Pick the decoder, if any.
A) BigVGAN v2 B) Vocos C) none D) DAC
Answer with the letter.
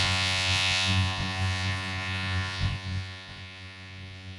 B